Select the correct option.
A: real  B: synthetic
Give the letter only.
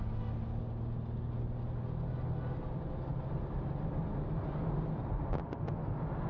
A